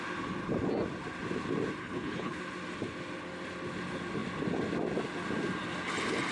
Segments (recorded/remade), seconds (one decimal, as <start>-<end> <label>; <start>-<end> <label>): 0.0-1.8 recorded; 1.8-2.4 remade; 2.4-6.3 recorded